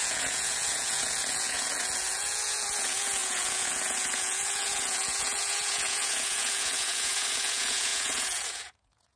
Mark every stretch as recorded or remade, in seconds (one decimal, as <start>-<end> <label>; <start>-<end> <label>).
0.0-9.2 remade